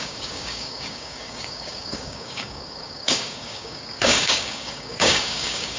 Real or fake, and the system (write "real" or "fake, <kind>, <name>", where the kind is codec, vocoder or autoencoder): fake, codec, DAC